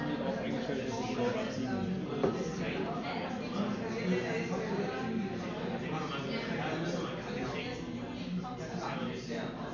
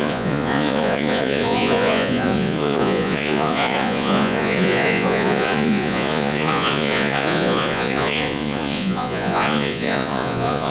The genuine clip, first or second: first